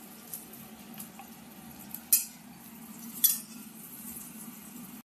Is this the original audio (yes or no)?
yes